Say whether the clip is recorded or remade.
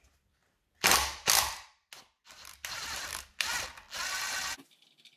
recorded